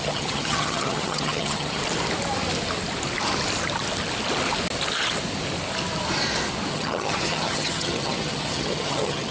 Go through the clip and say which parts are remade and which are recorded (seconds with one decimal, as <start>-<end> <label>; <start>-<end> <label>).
0.0-1.8 remade; 1.8-6.7 recorded; 6.7-9.3 remade